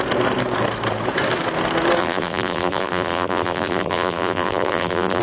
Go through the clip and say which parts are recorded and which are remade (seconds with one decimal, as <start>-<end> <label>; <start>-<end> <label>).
0.0-2.0 recorded; 2.0-5.2 remade